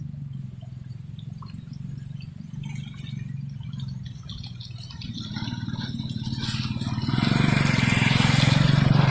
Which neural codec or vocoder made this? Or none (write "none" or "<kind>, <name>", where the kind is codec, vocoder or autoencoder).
none